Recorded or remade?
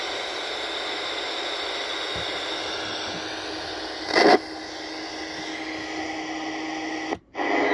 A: recorded